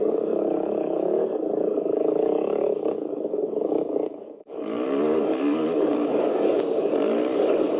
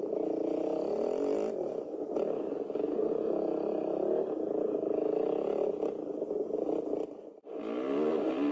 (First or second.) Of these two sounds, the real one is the second